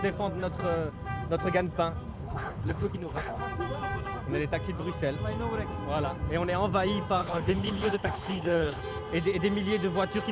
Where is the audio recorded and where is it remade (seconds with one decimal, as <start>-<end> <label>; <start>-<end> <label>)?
0.0-2.1 recorded; 2.1-3.4 remade; 3.4-7.2 recorded; 7.2-8.8 remade; 8.8-10.3 recorded